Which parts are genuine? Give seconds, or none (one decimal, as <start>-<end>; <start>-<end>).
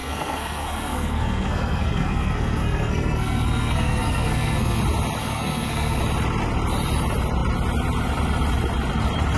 4.8-5.2; 6.0-9.4